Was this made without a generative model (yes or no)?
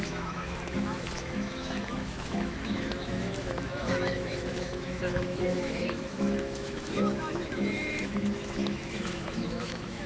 no